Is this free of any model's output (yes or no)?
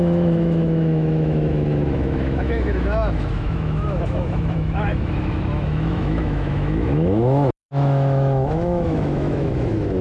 no